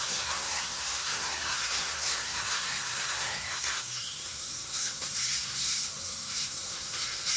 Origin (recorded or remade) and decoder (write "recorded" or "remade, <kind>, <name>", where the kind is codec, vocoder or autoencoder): remade, codec, SNAC